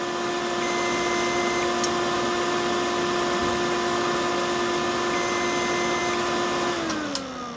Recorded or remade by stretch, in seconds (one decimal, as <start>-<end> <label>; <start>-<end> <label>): 0.0-7.6 recorded